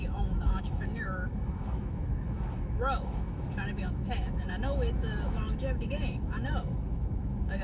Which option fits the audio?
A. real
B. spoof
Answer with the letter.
B